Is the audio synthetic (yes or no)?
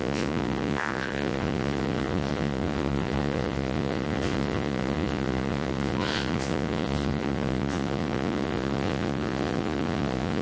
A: yes